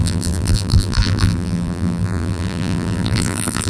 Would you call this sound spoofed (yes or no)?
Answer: yes